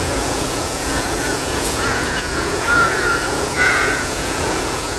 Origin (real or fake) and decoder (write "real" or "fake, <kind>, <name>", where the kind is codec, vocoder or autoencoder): fake, vocoder, Vocos